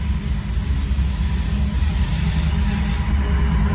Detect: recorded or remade recorded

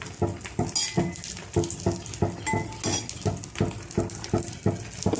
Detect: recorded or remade recorded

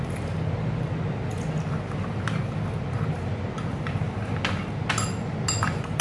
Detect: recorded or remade recorded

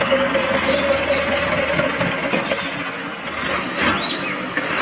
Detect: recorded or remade recorded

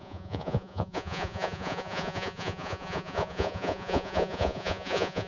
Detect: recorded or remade remade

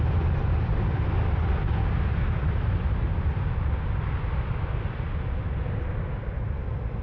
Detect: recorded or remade recorded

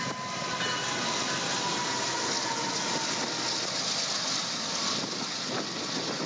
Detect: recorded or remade recorded